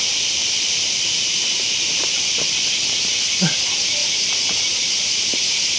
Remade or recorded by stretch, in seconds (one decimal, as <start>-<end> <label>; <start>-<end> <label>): 0.0-0.4 recorded; 0.4-2.7 remade; 2.7-4.0 recorded; 4.0-4.6 remade; 4.6-5.8 recorded